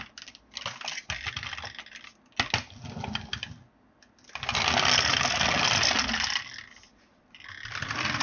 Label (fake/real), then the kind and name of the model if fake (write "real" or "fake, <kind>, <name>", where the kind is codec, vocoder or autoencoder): real